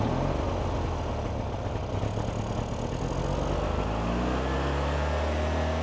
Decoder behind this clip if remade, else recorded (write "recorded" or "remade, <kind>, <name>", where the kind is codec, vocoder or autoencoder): recorded